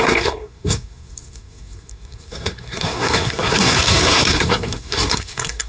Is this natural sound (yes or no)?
no